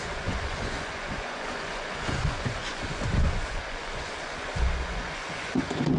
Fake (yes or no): yes